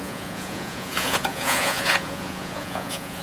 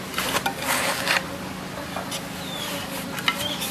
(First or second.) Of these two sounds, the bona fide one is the second